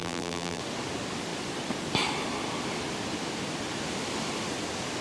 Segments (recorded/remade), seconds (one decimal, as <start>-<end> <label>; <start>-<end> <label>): 0.0-0.6 remade; 0.6-5.0 recorded